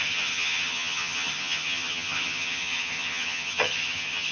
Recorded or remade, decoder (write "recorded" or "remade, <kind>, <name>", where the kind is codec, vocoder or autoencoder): remade, vocoder, HiFi-GAN